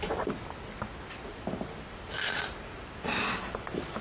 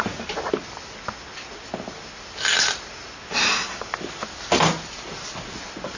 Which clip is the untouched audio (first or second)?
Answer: second